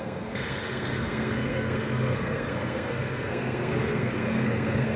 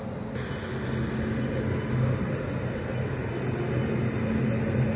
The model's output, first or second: first